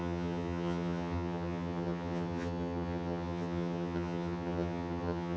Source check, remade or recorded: remade